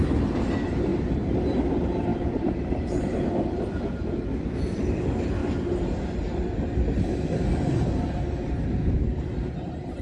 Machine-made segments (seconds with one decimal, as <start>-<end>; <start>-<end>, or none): 2.1-3.7